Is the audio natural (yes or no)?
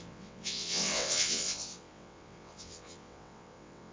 no